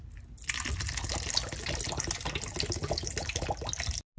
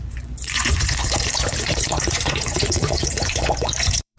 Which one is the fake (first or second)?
second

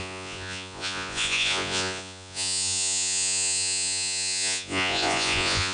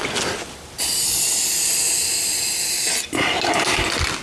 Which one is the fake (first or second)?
first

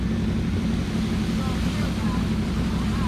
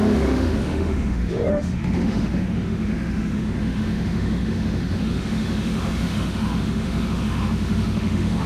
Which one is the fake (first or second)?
second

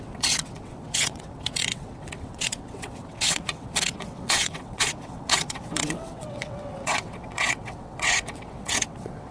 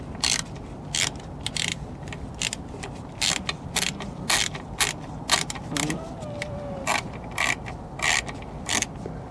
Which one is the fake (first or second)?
first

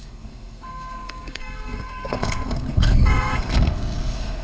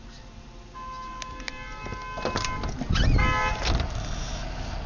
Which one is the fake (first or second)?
first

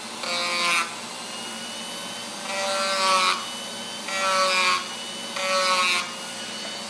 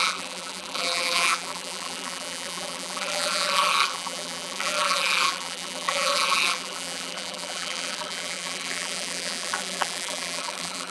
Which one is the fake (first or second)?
second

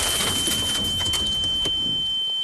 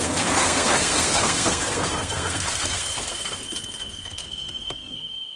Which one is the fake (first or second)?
second